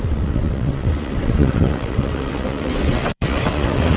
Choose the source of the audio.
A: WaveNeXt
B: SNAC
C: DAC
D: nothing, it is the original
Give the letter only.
A